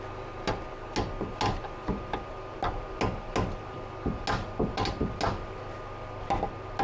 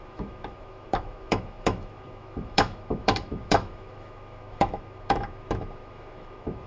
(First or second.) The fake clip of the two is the second